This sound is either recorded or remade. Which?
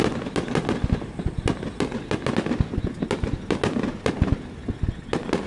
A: recorded